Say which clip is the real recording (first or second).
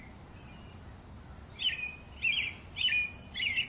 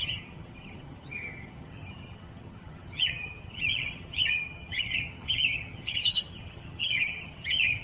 first